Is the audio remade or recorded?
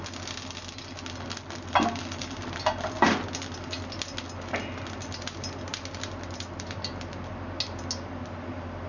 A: recorded